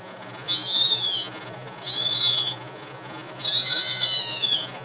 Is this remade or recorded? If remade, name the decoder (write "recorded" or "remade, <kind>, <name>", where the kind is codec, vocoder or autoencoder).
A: remade, vocoder, Vocos